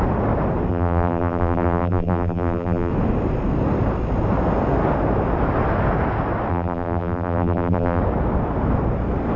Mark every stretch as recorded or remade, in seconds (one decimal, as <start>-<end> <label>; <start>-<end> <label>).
0.0-0.7 recorded; 0.7-2.9 remade; 2.9-6.5 recorded; 6.5-8.0 remade; 8.0-9.4 recorded